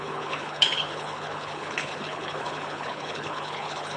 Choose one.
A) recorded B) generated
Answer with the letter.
B